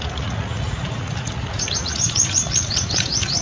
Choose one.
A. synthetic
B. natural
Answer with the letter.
A